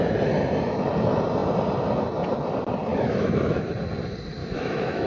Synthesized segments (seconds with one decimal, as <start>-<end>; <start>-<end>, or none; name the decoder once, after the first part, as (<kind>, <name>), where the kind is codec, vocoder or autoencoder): 2.9-3.7 (autoencoder, DAC-VAE); 4.4-5.1